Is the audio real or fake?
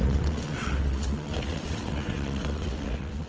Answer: fake